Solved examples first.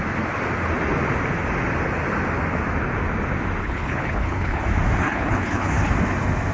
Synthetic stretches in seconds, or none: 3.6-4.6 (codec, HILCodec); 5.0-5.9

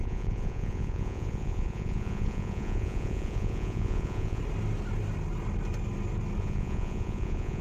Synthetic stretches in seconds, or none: 0.0-4.4 (vocoder, Vocos); 6.4-7.6

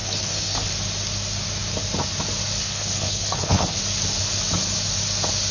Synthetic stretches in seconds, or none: 0.0-0.7 (codec, HILCodec); 2.6-3.8

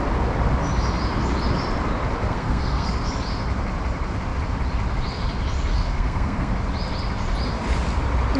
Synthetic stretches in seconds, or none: 2.2-2.9 (codec, SNAC); 5.7-6.5

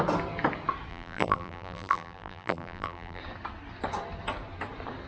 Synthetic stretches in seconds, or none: 0.9-3.2 (vocoder, BigVGAN v2)

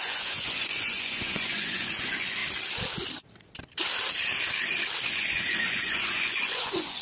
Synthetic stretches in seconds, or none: 0.0-2.4 (vocoder, Vocos); 5.1-7.0

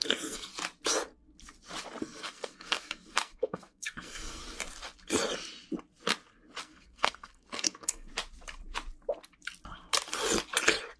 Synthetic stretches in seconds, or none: 0.0-0.5 (codec, SNAC); 2.0-4.4; 6.6-8.1

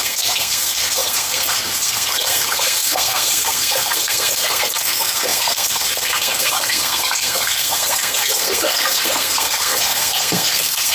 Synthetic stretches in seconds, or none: 0.0-10.9 (codec, SNAC)